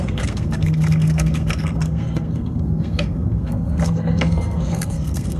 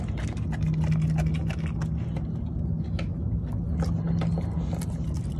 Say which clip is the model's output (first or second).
first